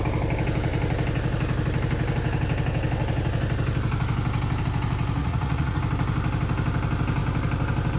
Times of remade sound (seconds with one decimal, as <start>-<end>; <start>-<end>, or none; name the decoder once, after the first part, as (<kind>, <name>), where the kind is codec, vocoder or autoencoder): 5.2-5.8 (vocoder, Vocos)